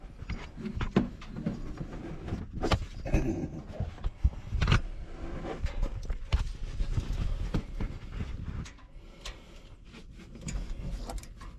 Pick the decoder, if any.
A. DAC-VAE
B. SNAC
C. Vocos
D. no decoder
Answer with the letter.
D